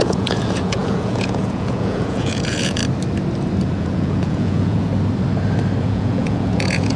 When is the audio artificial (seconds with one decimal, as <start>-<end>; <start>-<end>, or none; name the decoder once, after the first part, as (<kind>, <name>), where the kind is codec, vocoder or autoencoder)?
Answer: 0.0-2.8 (vocoder, Vocos); 3.8-4.9; 5.8-7.0